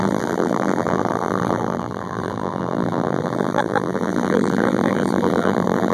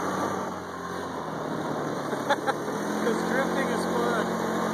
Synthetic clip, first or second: first